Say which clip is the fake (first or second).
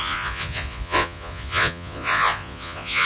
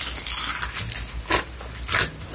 first